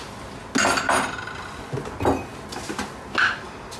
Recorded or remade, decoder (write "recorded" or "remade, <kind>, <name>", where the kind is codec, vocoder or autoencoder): recorded